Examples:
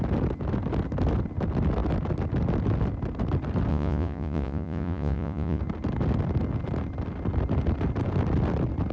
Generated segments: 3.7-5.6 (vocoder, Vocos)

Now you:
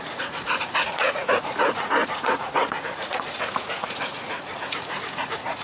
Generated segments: 0.0-5.6 (vocoder, Vocos)

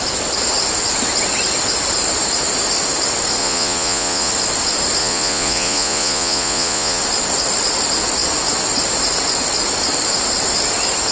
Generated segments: 3.4-4.3 (vocoder, Vocos); 5.0-7.0

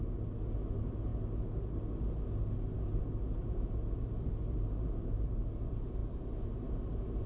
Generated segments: none

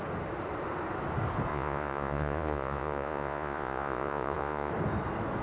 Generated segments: 1.5-4.7 (vocoder, Vocos)

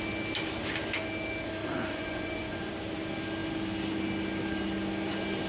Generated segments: 1.6-2.7 (vocoder, Vocos)

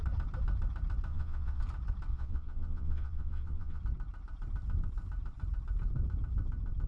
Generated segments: 1.1-1.6 (vocoder, Vocos); 2.1-3.8